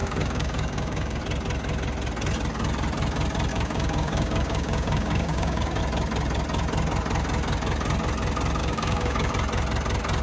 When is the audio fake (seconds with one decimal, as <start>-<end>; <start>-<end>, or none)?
0.0-1.2; 3.5-5.8; 8.6-9.3